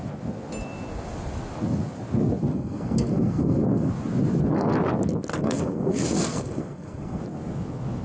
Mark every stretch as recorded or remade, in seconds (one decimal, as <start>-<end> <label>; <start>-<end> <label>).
0.0-2.5 recorded; 2.5-3.9 remade; 3.9-5.3 recorded; 5.3-7.2 remade; 7.2-8.0 recorded